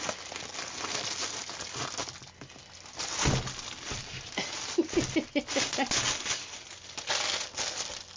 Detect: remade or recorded recorded